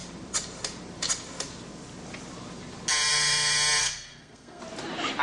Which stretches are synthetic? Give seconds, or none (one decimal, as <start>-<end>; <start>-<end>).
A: 3.8-4.6